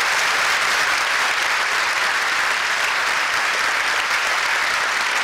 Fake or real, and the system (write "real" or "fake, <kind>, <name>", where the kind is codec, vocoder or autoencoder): real